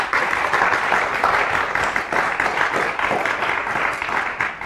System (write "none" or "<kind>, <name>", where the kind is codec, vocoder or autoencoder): none